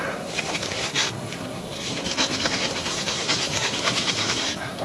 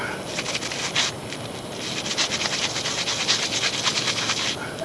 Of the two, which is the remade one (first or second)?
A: first